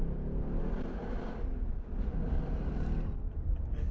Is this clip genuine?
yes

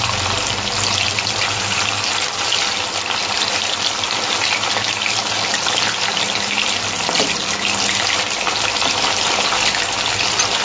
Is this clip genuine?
yes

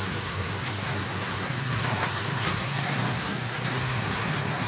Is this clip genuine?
no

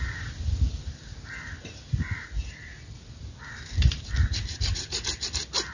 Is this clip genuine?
yes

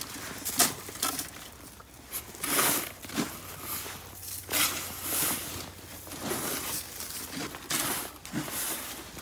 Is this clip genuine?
yes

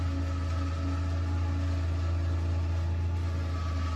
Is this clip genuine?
yes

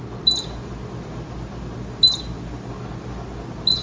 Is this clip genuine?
yes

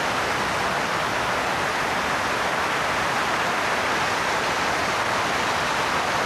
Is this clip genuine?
yes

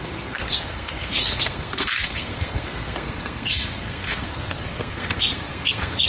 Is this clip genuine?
no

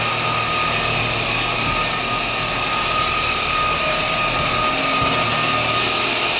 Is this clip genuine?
yes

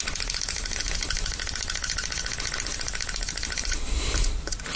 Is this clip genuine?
yes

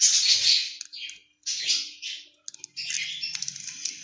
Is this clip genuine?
yes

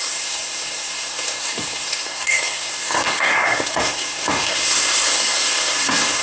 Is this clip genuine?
no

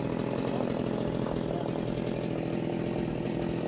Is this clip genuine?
yes